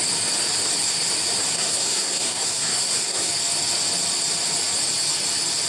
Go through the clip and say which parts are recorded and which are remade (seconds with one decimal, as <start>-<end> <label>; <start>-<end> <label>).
0.0-1.5 recorded; 1.5-3.3 remade; 3.3-5.7 recorded